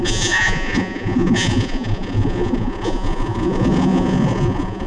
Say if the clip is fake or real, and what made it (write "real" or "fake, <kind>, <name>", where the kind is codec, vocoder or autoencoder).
fake, vocoder, Vocos